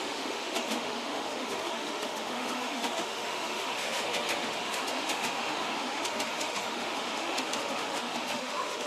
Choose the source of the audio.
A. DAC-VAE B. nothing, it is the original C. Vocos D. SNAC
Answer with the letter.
A